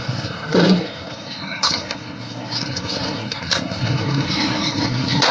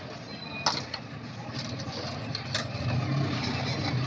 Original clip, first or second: second